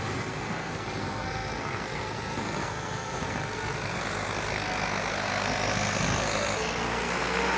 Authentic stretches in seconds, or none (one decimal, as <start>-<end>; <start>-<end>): none